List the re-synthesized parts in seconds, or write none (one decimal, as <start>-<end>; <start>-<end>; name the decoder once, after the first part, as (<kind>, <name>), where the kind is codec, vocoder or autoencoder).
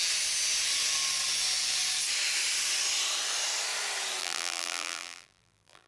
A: 4.2-5.9 (vocoder, BigVGAN v2)